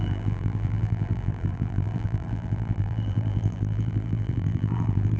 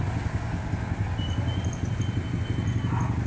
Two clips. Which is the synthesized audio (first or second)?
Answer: first